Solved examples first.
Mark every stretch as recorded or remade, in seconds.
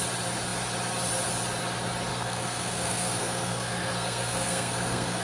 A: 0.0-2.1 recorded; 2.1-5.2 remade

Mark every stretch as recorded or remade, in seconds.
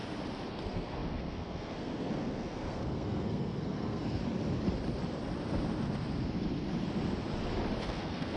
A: 0.0-0.5 recorded; 0.5-4.2 remade; 4.2-7.8 recorded; 7.8-8.4 remade